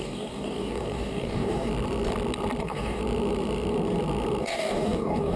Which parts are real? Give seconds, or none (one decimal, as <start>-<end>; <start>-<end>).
1.7-2.6; 3.0-4.4